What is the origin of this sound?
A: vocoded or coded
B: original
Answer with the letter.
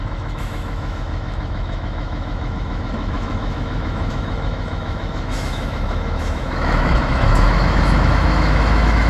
A